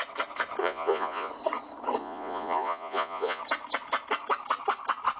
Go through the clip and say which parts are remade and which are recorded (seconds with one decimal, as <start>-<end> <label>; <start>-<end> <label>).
0.0-0.6 recorded; 0.6-1.3 remade; 1.3-2.0 recorded; 2.0-3.4 remade; 3.4-5.2 recorded